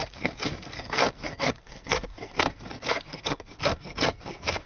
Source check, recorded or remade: remade